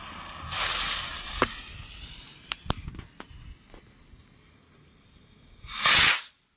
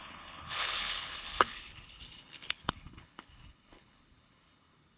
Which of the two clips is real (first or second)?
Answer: first